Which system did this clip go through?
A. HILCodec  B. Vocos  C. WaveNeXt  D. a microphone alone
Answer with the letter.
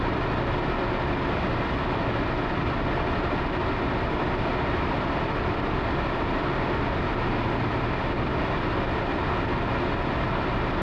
D